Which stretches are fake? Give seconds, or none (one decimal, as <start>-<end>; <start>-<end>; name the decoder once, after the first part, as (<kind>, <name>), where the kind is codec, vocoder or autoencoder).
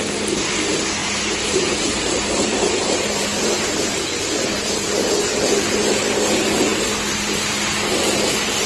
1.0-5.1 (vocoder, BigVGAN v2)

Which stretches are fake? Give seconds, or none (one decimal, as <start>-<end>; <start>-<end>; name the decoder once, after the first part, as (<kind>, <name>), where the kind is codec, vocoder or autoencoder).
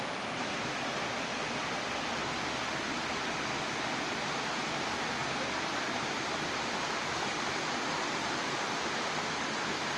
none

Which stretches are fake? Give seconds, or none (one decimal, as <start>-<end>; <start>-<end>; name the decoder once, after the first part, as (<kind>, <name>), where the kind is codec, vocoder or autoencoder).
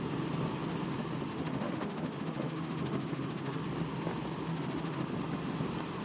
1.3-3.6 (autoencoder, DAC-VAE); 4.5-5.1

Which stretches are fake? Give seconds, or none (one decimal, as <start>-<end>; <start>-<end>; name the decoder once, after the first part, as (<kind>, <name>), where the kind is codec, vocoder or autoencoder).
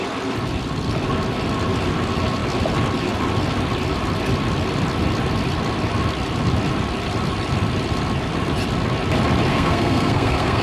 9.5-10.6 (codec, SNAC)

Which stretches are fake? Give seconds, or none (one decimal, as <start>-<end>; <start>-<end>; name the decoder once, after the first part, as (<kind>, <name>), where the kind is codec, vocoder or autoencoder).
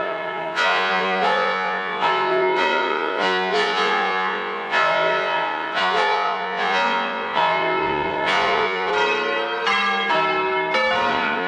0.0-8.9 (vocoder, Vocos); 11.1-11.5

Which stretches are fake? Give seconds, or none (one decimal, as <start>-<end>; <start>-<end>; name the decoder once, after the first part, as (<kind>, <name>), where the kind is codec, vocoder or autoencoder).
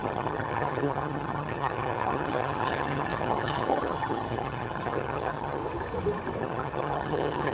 0.0-5.6 (vocoder, HiFi-GAN); 6.4-7.5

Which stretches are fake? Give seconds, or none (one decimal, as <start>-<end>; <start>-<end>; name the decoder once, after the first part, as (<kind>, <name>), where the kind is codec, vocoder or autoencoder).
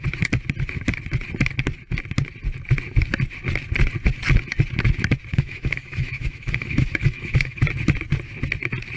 5.3-7.6 (autoencoder, DAC-VAE)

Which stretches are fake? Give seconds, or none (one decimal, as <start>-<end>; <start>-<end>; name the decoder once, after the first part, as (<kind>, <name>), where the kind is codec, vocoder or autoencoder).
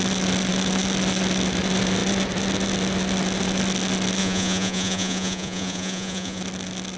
4.2-6.4 (vocoder, Vocos)